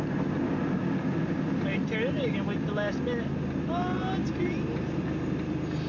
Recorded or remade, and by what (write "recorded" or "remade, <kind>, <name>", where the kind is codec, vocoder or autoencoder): recorded